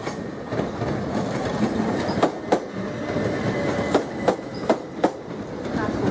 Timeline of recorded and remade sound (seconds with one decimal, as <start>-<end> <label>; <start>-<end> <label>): 0.0-6.1 recorded